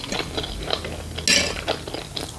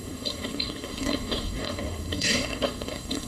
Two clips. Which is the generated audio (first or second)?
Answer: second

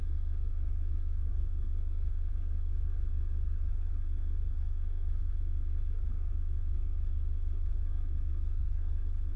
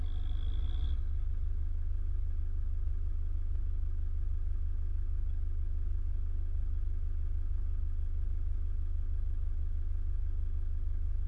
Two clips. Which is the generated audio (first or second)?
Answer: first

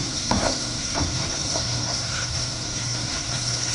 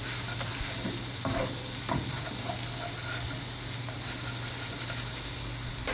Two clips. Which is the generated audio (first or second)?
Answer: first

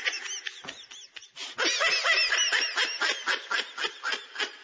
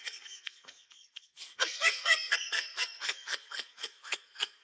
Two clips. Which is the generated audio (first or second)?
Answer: second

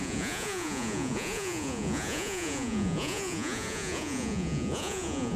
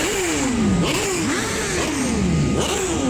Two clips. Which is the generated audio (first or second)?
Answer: first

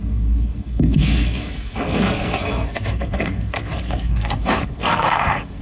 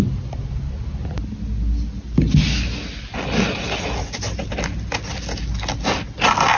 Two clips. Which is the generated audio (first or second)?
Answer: first